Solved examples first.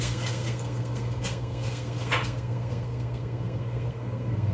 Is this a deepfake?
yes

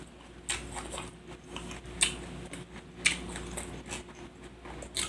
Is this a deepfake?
no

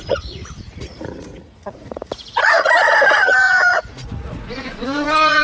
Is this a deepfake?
yes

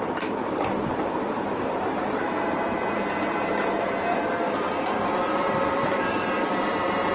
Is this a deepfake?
yes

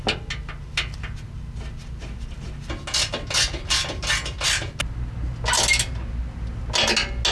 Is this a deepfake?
no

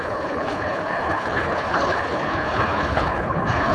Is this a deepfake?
yes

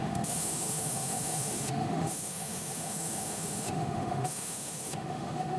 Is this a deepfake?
yes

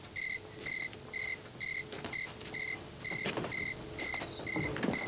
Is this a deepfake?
no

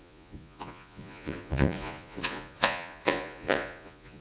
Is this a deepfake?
yes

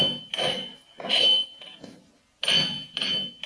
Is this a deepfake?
no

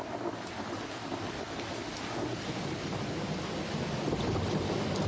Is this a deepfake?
no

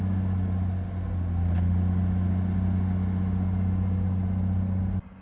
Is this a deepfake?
no